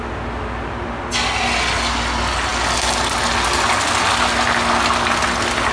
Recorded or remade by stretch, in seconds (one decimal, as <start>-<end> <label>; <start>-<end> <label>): 0.0-5.7 recorded